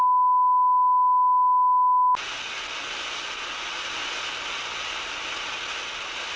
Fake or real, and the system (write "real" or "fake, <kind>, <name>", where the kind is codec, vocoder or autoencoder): real